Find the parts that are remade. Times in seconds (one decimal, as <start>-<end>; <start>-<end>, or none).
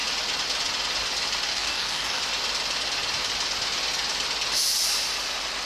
1.5-2.2